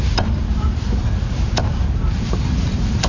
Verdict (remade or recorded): remade